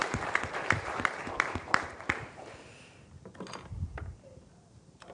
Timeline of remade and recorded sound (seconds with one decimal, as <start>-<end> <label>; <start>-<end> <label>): 0.0-5.1 remade